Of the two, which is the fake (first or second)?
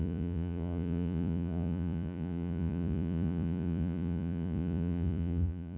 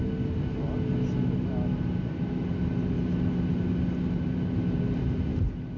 first